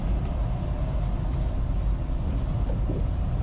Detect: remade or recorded recorded